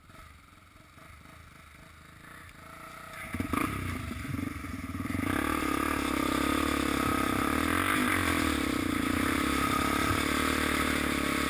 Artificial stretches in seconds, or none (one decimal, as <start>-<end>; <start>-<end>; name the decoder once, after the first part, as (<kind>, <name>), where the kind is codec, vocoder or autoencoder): 3.6-5.6 (vocoder, BigVGAN v2); 8.1-10.1